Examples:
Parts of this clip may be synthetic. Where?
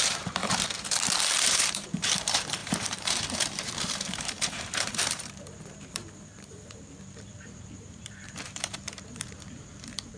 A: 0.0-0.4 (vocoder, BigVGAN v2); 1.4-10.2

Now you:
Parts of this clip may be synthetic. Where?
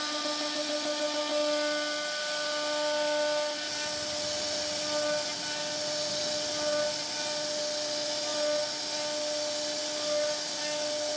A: none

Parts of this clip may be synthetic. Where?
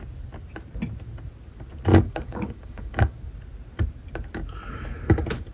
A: 1.9-3.2 (codec, DAC)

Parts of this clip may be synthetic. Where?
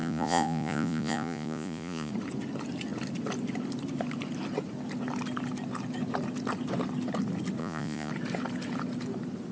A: 0.0-2.1 (vocoder, Vocos); 7.6-8.1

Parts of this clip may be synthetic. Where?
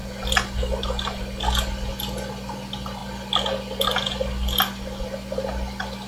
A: none